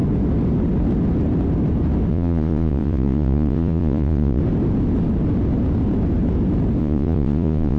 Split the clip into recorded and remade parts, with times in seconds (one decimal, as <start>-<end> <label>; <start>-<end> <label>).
0.0-2.1 recorded; 2.1-4.4 remade; 4.4-6.8 recorded; 6.8-7.8 remade